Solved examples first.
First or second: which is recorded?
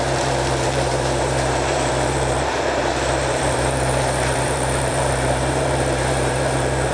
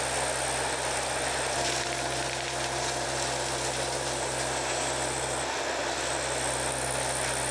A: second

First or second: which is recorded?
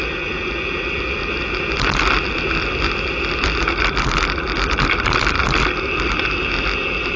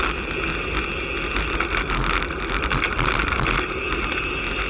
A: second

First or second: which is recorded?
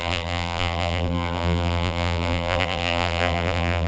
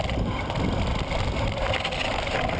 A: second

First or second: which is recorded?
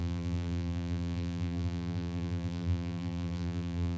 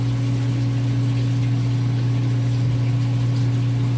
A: second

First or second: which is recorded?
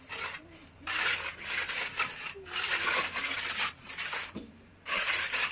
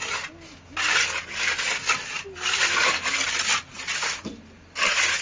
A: second